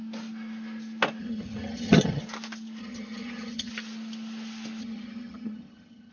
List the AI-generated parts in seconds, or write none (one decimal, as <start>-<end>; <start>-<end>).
1.2-2.2; 2.8-3.7; 4.8-6.1